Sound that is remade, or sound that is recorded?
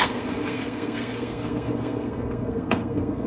remade